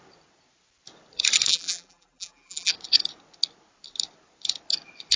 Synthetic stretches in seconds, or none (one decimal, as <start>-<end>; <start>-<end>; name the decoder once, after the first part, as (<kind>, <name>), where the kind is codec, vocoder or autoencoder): 1.5-2.7 (vocoder, BigVGAN v2)